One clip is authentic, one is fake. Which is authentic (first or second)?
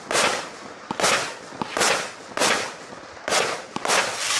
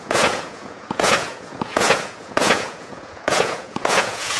first